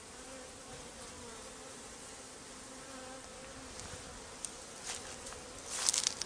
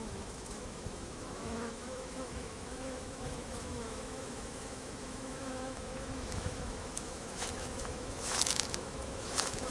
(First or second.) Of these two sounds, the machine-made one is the second